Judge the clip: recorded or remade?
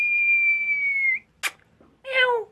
recorded